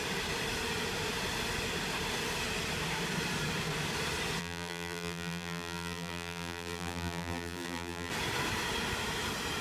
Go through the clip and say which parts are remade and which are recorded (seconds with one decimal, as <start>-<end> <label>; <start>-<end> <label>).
0.0-4.4 recorded; 4.4-8.1 remade; 8.1-9.6 recorded